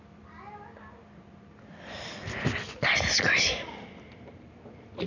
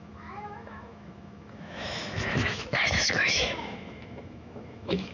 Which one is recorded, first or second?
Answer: first